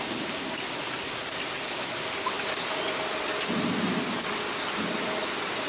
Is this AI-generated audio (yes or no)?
no